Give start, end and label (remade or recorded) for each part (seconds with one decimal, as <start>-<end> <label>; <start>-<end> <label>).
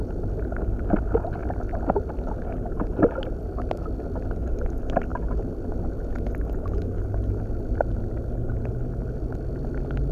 0.0-10.1 recorded